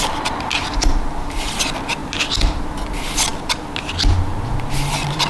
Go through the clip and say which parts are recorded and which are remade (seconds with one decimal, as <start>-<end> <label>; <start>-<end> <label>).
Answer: 0.0-0.6 recorded; 0.6-1.5 remade; 1.5-5.3 recorded